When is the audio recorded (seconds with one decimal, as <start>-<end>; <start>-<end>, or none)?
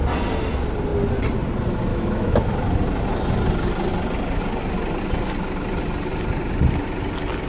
0.0-1.9; 2.5-7.5